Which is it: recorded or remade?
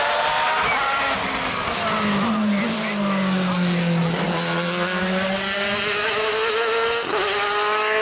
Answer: recorded